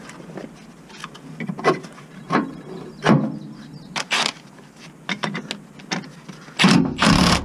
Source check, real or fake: real